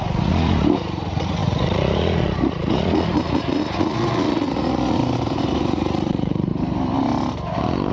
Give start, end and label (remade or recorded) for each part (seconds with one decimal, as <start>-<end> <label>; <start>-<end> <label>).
0.0-5.0 remade; 5.0-5.6 recorded; 5.6-6.5 remade; 6.5-7.9 recorded